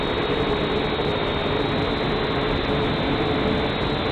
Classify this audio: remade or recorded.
recorded